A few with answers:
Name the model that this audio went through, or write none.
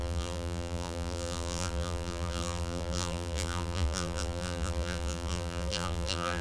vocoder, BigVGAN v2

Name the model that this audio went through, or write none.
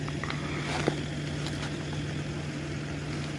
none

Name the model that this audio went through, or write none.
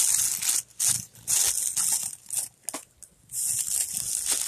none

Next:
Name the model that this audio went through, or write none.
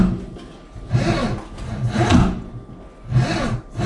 none